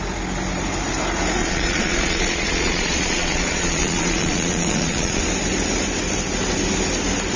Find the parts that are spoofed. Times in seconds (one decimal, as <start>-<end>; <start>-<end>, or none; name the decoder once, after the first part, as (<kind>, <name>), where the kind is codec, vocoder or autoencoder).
1.4-5.2 (vocoder, Vocos)